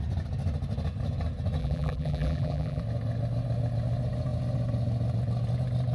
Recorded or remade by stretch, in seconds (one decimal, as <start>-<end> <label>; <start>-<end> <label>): 0.0-1.6 recorded; 1.6-2.8 remade; 2.8-5.9 recorded